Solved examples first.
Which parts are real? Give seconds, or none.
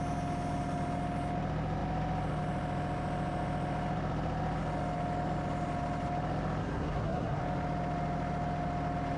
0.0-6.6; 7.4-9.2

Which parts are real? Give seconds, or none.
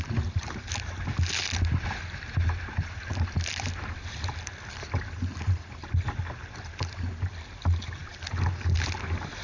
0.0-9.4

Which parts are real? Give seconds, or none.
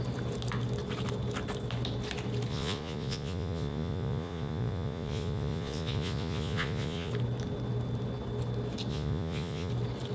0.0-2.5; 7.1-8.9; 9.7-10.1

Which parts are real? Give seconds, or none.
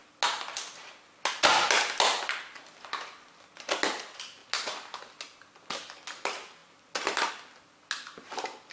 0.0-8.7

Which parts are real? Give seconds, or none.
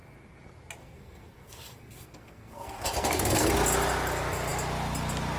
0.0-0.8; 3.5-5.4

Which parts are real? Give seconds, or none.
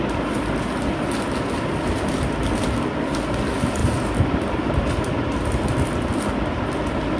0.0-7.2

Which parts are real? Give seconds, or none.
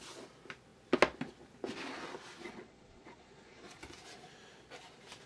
0.0-2.4; 3.8-5.3